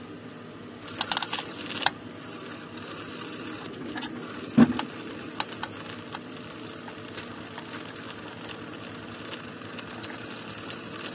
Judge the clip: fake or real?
real